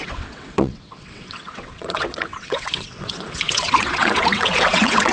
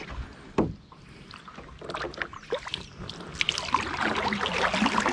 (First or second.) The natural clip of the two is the second